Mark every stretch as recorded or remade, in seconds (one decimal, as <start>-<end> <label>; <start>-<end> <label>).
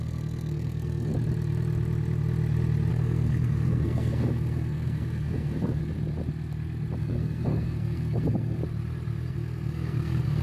0.0-1.1 remade; 1.1-2.9 recorded; 2.9-5.8 remade; 5.8-7.0 recorded; 7.0-8.6 remade; 8.6-9.3 recorded; 9.3-10.4 remade